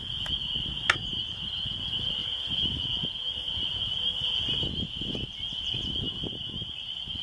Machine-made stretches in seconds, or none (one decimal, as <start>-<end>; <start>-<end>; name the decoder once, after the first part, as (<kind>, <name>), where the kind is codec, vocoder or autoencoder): none